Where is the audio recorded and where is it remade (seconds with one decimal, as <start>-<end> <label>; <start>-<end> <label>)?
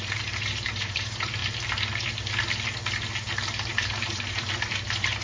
0.0-1.4 remade; 1.4-3.7 recorded; 3.7-5.2 remade